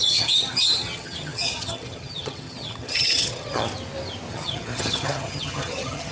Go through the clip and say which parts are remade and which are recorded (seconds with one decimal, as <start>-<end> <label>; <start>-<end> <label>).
0.0-3.7 remade; 3.7-4.3 recorded; 4.3-6.1 remade